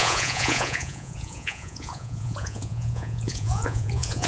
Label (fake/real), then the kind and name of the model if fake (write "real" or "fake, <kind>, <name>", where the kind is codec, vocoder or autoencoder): fake, vocoder, Vocos